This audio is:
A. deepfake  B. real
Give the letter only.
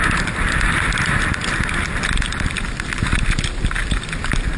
B